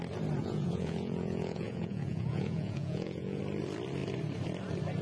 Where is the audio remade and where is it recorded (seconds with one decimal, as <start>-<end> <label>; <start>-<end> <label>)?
0.0-0.4 recorded; 0.4-3.4 remade; 3.4-5.0 recorded